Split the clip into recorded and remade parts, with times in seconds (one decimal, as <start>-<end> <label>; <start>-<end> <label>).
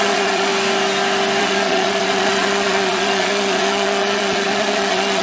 0.0-0.5 remade; 0.5-1.4 recorded; 1.4-5.2 remade